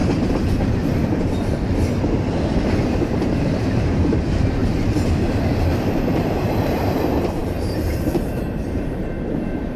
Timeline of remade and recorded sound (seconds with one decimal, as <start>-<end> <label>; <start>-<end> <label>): 0.0-2.8 recorded; 2.8-9.8 remade